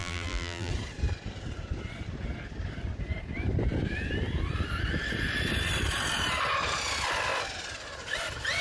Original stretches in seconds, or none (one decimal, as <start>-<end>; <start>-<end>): 0.7-8.6